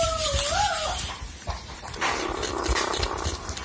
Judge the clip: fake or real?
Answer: fake